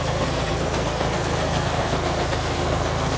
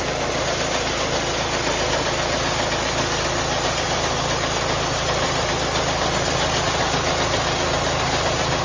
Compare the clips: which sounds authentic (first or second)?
second